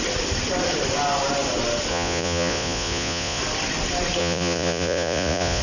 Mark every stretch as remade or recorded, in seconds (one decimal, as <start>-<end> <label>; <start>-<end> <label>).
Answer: 0.0-1.9 recorded; 1.9-3.4 remade; 3.4-4.2 recorded; 4.2-5.6 remade